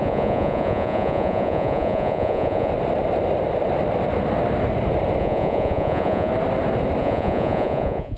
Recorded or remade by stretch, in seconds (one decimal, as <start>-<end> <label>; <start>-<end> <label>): 0.0-2.7 remade; 2.7-5.2 recorded; 5.2-6.3 remade; 6.3-7.0 recorded; 7.0-8.2 remade